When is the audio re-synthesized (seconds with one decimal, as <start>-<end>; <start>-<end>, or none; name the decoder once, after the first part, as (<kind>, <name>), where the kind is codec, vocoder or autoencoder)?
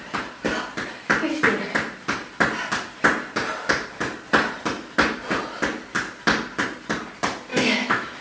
7.5-8.2 (autoencoder, DAC-VAE)